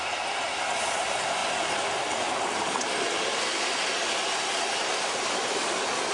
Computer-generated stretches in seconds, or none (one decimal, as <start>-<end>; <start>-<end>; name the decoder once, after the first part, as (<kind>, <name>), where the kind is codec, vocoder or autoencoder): none